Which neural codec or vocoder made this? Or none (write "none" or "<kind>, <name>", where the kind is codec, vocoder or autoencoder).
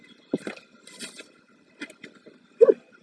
none